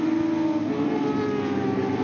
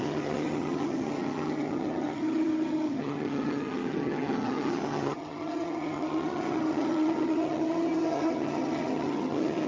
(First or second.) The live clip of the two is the first